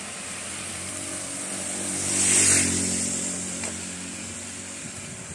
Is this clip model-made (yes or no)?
yes